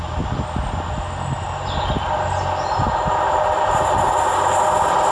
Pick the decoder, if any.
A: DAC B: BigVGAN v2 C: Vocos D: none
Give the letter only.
D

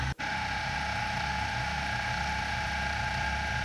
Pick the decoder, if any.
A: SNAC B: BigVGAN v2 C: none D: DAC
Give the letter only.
C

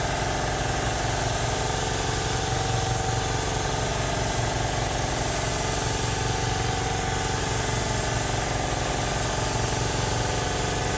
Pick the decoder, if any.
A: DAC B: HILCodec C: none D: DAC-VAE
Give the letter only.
C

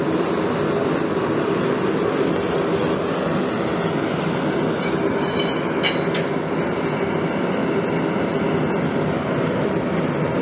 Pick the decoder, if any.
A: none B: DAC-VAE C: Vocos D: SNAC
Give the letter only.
A